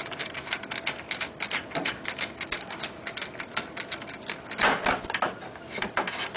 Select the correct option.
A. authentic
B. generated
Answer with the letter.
A